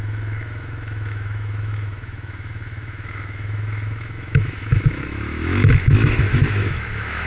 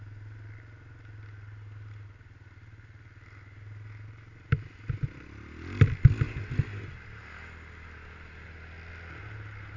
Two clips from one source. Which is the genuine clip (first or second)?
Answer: second